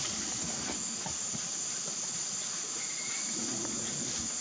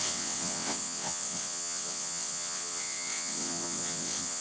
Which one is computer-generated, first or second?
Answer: second